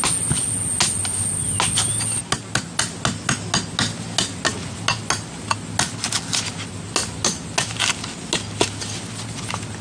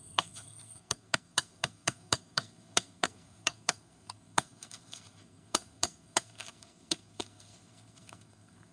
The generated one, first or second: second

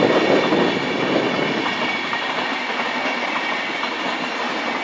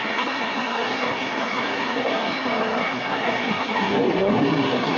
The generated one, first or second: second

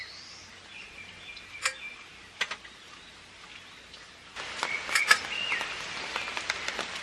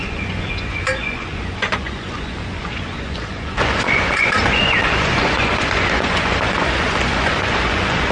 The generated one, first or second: second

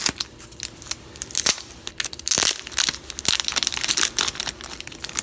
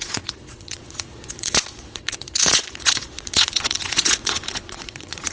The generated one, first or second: second